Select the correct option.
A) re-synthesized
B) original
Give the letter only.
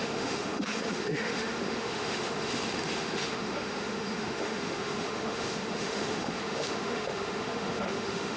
A